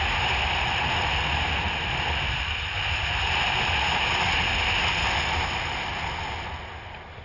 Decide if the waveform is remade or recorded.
recorded